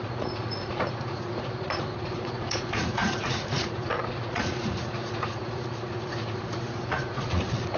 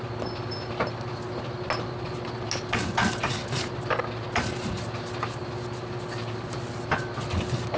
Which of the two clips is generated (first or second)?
first